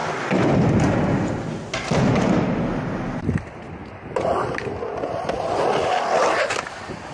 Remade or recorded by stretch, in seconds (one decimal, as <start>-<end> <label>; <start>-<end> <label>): 0.0-7.1 recorded